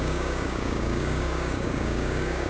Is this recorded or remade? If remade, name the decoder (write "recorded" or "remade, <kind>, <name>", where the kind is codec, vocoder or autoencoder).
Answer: remade, codec, DAC